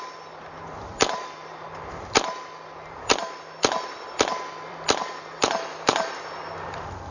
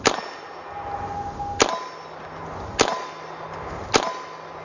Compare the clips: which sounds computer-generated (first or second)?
first